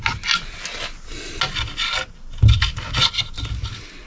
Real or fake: real